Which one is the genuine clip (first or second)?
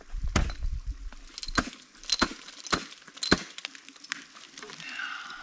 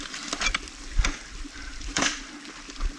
first